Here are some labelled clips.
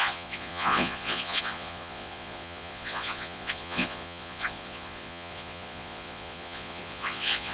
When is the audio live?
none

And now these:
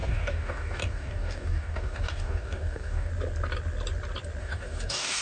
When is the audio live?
3.1-4.4

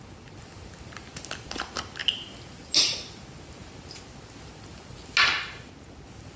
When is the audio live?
0.0-6.4

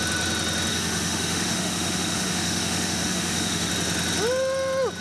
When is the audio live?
0.0-0.7; 3.7-5.0

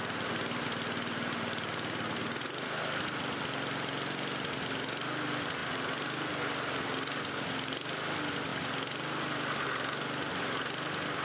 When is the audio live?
0.0-8.5; 9.6-11.2

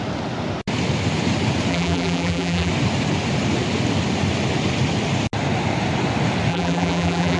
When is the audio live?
0.0-1.7; 2.7-6.5

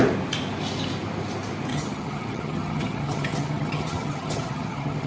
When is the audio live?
0.0-1.7